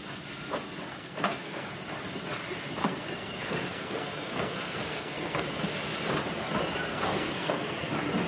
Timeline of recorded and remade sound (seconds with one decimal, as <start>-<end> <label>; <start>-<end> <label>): 0.0-0.9 recorded; 0.9-1.7 remade; 1.7-2.8 recorded; 2.8-5.5 remade; 5.5-6.9 recorded; 6.9-7.9 remade; 7.9-8.3 recorded